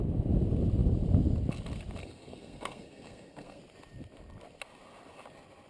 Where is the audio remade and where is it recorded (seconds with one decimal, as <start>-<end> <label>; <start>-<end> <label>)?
0.0-2.0 recorded; 2.0-3.6 remade; 3.6-5.7 recorded